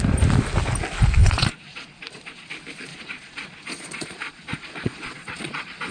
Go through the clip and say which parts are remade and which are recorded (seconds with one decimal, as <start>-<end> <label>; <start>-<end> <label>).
0.0-1.2 recorded; 1.2-2.5 remade; 2.5-2.9 recorded; 2.9-5.9 remade